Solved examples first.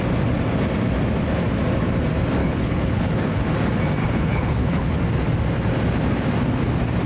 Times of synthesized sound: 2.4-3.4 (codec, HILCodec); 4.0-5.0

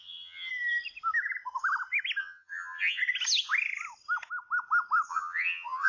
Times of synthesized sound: 0.0-0.5 (vocoder, HiFi-GAN); 2.2-3.0; 5.1-5.9

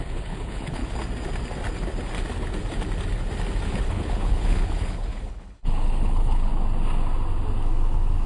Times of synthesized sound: 0.0-0.8 (codec, HILCodec); 3.8-6.5

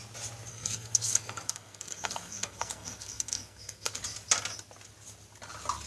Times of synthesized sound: 0.5-4.0 (codec, SNAC)